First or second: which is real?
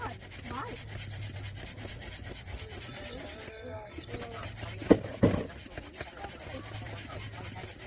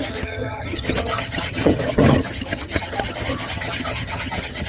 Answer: first